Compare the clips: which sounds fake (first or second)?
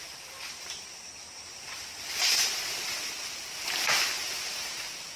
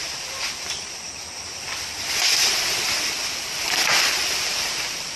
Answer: second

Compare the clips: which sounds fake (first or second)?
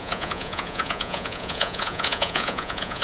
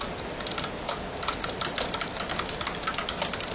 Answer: first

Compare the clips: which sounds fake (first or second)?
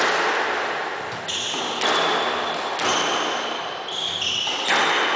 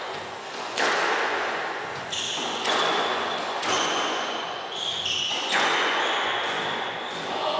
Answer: second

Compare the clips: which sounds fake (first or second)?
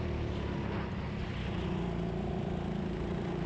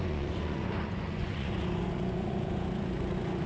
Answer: second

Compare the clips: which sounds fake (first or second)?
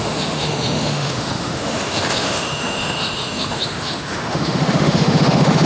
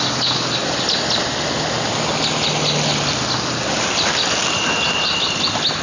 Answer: first